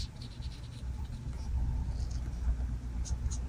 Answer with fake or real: real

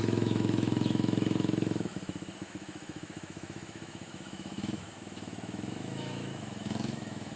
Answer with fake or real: fake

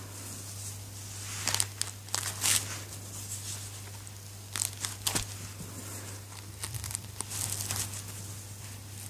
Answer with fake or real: real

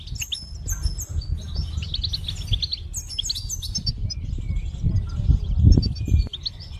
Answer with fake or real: real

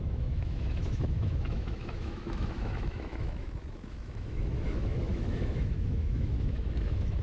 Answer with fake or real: fake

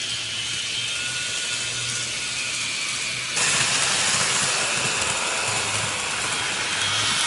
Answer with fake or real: real